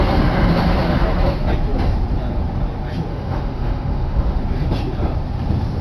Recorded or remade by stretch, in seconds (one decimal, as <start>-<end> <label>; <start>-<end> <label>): 0.0-3.1 recorded; 3.1-4.4 remade; 4.4-5.8 recorded